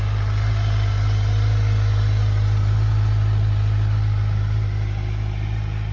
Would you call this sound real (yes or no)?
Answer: yes